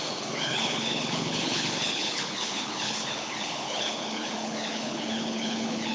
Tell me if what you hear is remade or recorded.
remade